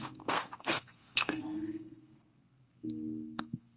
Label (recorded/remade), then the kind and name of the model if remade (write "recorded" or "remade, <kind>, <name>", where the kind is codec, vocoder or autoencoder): remade, codec, SNAC